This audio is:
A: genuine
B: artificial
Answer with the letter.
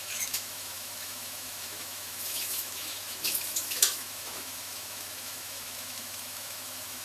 B